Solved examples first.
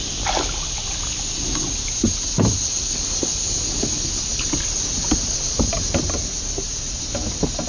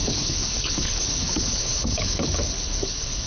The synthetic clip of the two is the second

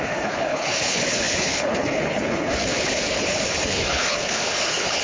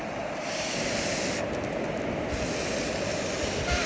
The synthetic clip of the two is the first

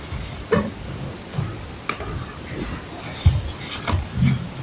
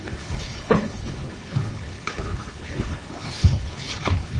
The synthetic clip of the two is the second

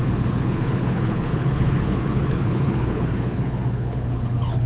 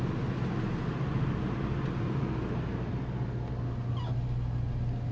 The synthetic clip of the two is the first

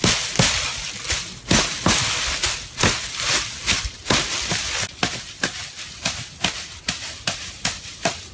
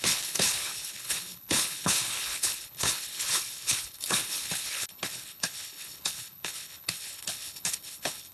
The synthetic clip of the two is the second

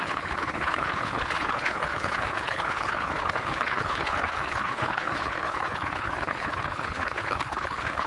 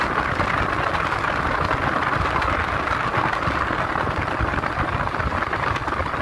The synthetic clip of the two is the first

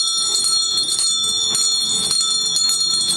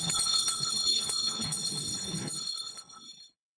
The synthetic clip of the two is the second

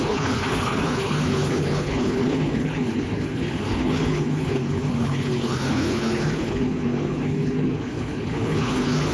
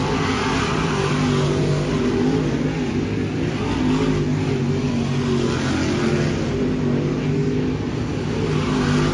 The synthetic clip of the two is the first